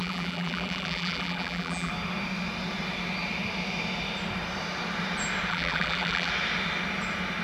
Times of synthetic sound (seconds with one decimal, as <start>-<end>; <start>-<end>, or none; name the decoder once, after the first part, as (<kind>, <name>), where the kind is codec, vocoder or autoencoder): 0.0-1.9 (vocoder, BigVGAN v2); 5.5-6.3

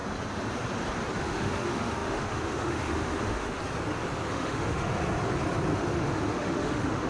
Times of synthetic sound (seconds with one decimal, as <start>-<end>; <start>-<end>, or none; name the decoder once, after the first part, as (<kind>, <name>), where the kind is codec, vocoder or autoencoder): 1.2-3.6 (autoencoder, DAC-VAE); 4.3-5.0; 5.8-7.1

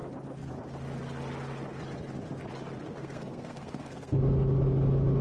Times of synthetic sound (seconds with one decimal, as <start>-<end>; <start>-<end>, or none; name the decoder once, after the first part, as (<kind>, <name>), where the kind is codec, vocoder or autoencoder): 3.0-4.2 (codec, SNAC)

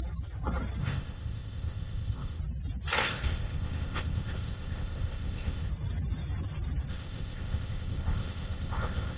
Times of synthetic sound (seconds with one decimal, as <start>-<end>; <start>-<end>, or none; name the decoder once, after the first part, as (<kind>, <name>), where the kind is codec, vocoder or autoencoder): 0.8-2.4 (codec, ZipCodec); 3.0-5.7; 6.9-9.2

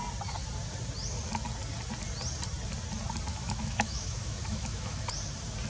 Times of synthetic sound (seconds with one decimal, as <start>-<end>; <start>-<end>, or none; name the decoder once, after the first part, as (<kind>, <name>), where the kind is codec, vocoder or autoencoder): 3.3-5.1 (autoencoder, DAC-VAE)

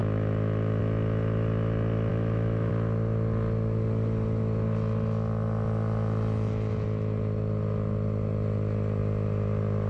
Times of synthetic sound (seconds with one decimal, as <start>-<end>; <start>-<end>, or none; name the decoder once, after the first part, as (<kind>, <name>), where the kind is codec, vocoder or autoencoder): 0.0-0.8 (autoencoder, DAC-VAE); 2.1-2.7

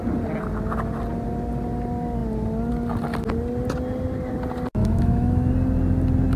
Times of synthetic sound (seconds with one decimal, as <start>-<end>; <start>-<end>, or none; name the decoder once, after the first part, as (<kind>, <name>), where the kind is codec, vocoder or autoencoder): 4.8-5.5 (autoencoder, DAC-VAE)